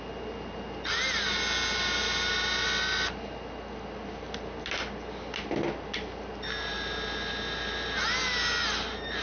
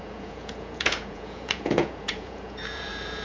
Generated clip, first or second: second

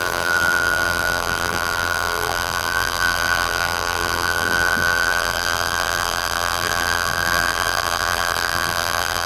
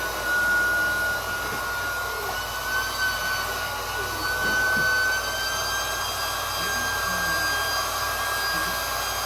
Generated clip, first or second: first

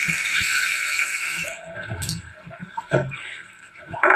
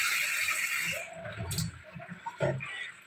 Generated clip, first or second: first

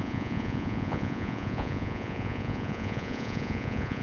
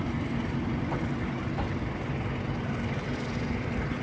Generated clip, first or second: first